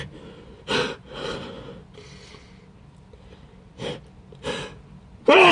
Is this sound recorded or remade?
recorded